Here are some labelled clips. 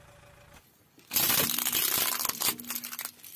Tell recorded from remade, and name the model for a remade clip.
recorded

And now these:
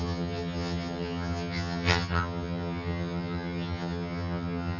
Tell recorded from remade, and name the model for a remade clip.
remade, vocoder, HiFi-GAN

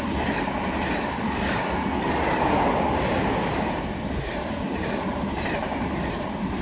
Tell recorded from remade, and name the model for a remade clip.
recorded